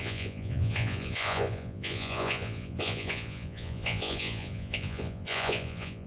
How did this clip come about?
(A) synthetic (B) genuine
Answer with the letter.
A